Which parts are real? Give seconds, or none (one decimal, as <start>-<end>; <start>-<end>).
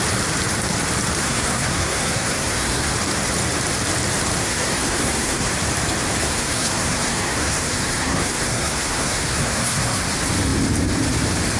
0.0-1.2; 2.9-4.4; 5.5-6.2; 10.0-11.6